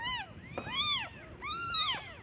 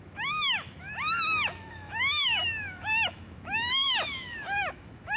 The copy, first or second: second